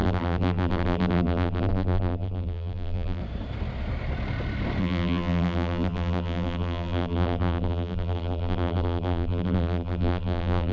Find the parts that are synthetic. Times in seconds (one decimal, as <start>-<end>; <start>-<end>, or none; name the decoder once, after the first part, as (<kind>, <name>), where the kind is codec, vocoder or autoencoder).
0.0-3.2 (vocoder, BigVGAN v2); 4.8-10.7